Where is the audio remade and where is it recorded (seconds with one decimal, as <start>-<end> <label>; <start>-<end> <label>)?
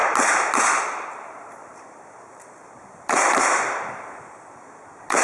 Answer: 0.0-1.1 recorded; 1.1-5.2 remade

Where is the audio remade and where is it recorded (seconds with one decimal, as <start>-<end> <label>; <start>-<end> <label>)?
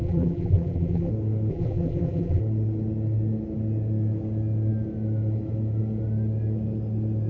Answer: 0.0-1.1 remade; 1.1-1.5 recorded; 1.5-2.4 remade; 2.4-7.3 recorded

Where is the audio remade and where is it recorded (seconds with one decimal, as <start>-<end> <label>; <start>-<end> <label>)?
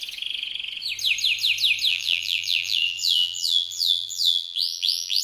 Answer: 0.0-1.9 recorded; 1.9-5.2 remade